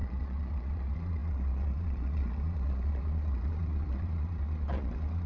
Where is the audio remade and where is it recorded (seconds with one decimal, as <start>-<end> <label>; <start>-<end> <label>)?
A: 0.0-5.3 remade